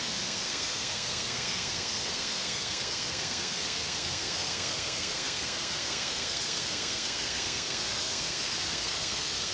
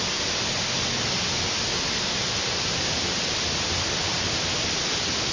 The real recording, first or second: second